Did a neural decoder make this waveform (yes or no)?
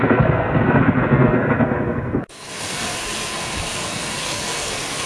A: yes